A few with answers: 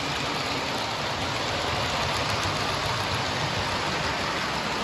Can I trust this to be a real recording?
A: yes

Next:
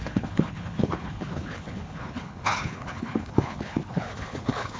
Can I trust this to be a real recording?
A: no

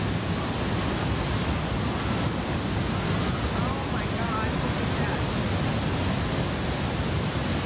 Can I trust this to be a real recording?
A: yes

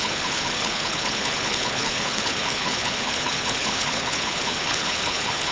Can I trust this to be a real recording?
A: no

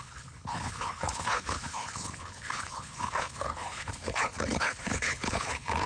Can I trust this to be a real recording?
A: no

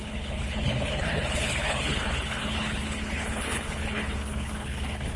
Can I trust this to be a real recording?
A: no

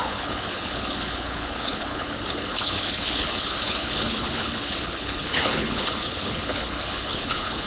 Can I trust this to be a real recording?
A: no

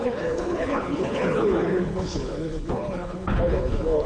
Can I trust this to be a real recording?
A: no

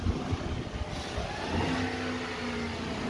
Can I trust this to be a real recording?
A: yes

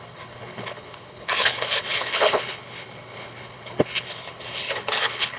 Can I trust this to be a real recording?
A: no